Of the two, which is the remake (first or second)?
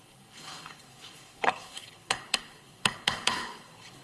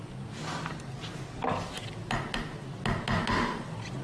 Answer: first